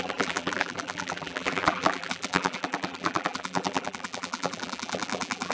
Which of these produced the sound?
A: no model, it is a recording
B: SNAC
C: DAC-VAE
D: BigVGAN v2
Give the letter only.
D